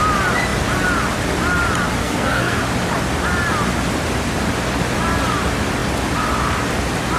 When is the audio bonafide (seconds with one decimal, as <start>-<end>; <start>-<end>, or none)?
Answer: 0.0-2.0; 2.6-7.2